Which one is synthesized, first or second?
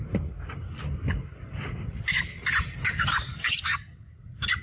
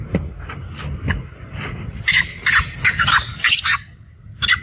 first